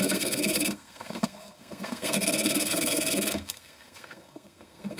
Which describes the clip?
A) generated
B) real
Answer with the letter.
A